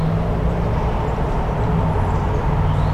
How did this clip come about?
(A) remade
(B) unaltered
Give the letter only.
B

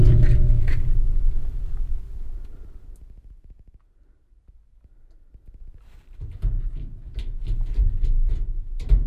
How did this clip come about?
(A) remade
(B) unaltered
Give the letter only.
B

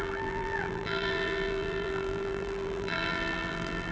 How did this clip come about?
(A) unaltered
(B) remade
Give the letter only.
B